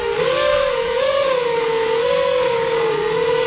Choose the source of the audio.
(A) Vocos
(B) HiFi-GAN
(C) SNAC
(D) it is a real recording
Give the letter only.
C